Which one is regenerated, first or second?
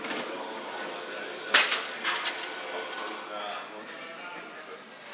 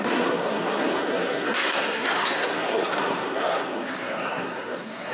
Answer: second